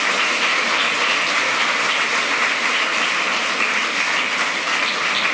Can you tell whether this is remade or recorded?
recorded